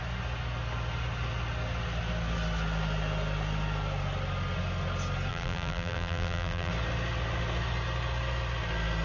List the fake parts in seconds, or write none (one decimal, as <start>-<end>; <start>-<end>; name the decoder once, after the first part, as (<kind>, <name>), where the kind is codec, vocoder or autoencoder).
5.3-6.7 (vocoder, BigVGAN v2)